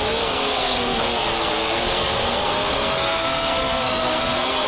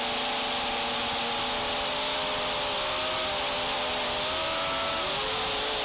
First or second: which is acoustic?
second